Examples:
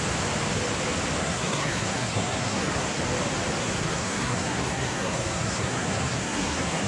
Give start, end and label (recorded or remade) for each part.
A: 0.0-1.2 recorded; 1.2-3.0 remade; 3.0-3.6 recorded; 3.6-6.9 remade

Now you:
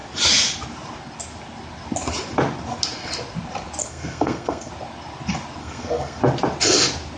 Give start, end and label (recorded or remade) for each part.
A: 0.0-3.8 recorded; 3.8-4.7 remade; 4.7-5.6 recorded; 5.6-6.2 remade; 6.2-7.2 recorded

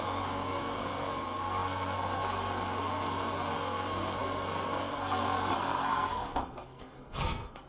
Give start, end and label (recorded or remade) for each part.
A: 0.0-7.7 remade

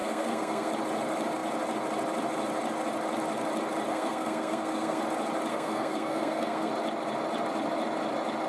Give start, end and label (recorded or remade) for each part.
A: 0.0-0.7 remade; 0.7-3.9 recorded; 3.9-5.0 remade; 5.0-5.5 recorded; 5.5-6.7 remade; 6.7-8.5 recorded

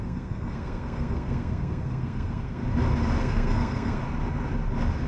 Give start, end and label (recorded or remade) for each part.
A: 0.0-2.6 remade; 2.6-3.2 recorded; 3.2-4.0 remade; 4.0-5.1 recorded

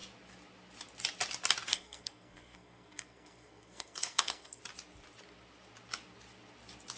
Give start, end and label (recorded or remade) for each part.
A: 0.0-1.7 recorded; 1.7-4.6 remade; 4.6-7.0 recorded

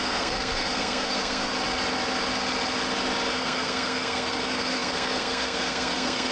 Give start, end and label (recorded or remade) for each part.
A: 0.0-1.5 remade; 1.5-3.3 recorded; 3.3-6.3 remade